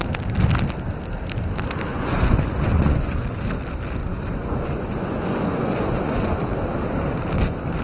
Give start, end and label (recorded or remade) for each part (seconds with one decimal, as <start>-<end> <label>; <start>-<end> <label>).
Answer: 0.0-1.9 recorded; 1.9-3.4 remade; 3.4-4.0 recorded; 4.0-6.4 remade; 6.4-7.8 recorded